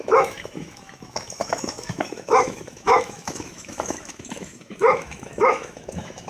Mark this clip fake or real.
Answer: fake